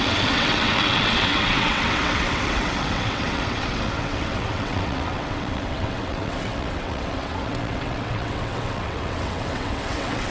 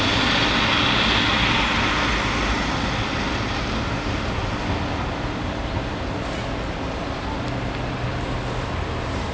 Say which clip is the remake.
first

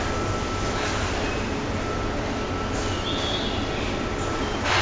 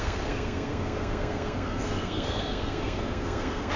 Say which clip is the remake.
second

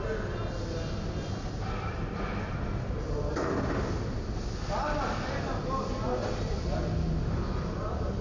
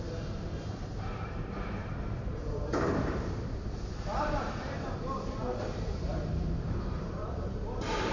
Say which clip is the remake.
second